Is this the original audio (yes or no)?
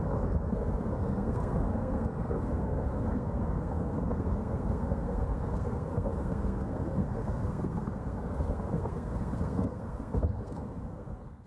no